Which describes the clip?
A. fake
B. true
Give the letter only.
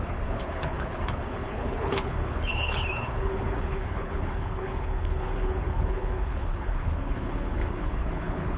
A